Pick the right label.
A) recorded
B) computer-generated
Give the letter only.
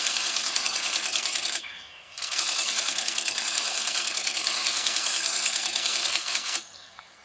B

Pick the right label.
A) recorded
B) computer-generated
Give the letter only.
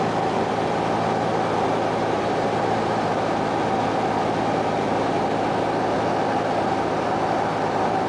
A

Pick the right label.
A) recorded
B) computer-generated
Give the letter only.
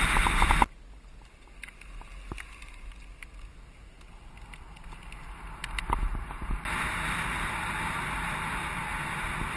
A